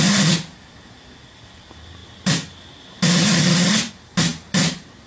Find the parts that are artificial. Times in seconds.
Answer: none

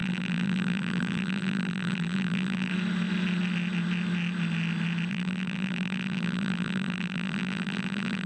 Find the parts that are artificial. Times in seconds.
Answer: 0.0-2.7 (vocoder, BigVGAN v2); 5.1-8.3

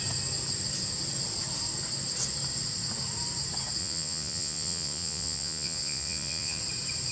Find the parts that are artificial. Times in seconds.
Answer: 3.8-6.6 (vocoder, Vocos)

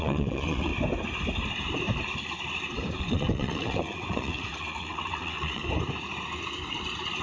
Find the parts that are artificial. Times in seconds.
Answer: 0.0-0.7 (vocoder, WaveNeXt); 3.0-5.6

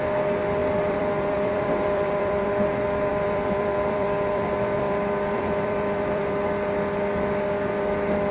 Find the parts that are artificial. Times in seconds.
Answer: 0.6-2.5 (vocoder, BigVGAN v2); 3.1-6.2

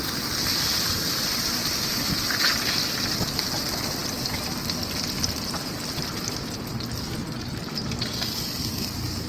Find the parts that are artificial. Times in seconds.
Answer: none

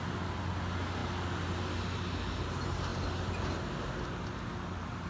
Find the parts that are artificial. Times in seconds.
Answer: none